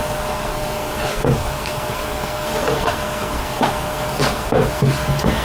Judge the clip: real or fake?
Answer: fake